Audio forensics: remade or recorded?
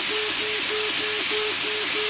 recorded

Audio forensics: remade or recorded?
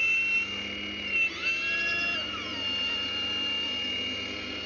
recorded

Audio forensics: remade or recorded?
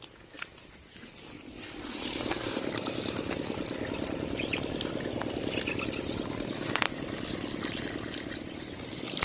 recorded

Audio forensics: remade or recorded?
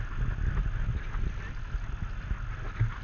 recorded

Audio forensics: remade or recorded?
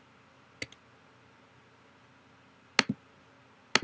recorded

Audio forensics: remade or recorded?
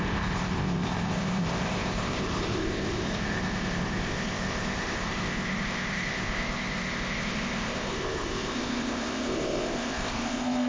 remade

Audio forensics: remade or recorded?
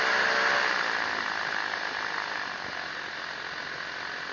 recorded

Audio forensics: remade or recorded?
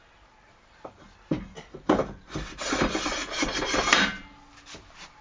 recorded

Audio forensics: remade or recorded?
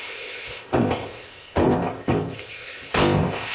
remade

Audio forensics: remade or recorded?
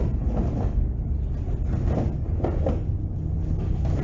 recorded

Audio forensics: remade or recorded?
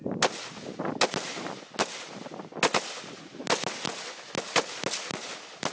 recorded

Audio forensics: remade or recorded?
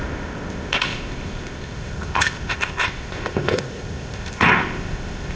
remade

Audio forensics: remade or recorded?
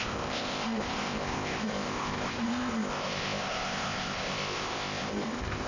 remade